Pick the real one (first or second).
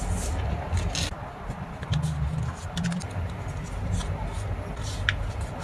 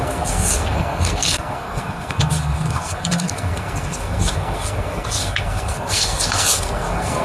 first